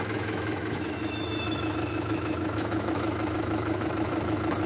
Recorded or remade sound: remade